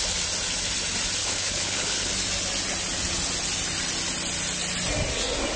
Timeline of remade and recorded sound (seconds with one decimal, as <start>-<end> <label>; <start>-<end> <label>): 0.0-1.2 recorded; 1.2-2.1 remade; 2.1-5.6 recorded